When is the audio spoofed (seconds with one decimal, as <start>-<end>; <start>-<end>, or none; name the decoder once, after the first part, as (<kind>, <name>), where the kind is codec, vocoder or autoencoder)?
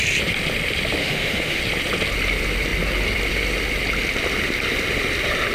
1.0-1.6 (autoencoder, DAC-VAE)